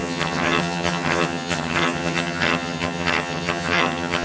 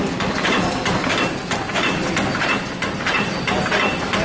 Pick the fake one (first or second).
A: first